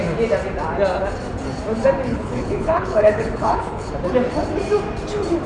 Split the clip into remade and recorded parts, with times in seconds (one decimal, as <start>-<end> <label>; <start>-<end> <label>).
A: 0.0-2.1 recorded; 2.1-3.9 remade; 3.9-5.5 recorded